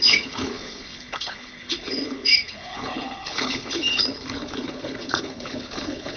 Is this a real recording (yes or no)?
no